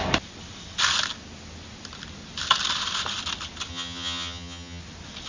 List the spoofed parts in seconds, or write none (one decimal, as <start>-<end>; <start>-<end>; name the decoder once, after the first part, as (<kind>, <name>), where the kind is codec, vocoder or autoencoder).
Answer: 3.7-4.8 (vocoder, HiFi-GAN)